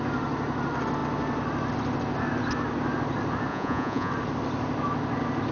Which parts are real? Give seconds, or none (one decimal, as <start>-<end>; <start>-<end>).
0.0-3.5; 4.1-5.5